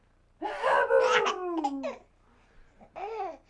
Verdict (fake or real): real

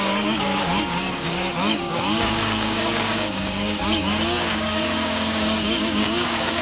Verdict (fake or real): fake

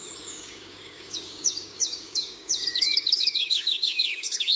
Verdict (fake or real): fake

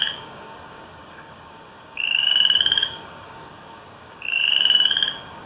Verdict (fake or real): fake